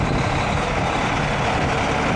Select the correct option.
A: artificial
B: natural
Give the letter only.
B